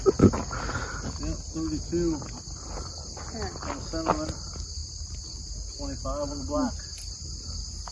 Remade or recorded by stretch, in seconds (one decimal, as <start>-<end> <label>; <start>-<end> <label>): 0.0-7.9 recorded